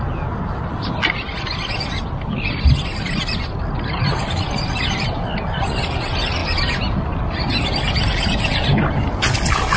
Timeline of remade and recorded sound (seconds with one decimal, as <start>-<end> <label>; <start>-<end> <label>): 0.0-9.8 recorded